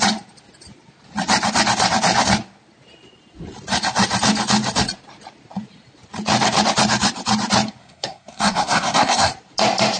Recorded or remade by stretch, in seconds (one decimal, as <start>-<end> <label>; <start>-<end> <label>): 0.0-7.8 recorded; 7.8-9.3 remade; 9.3-10.0 recorded